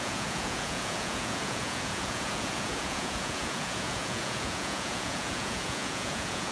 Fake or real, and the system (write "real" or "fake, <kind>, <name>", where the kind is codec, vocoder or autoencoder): fake, vocoder, Vocos